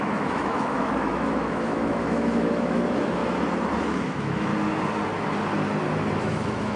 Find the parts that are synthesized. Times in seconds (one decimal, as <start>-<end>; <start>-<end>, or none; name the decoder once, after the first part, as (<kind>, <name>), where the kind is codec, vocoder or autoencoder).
0.0-3.2 (autoencoder, DAC-VAE); 3.8-4.5; 6.2-6.8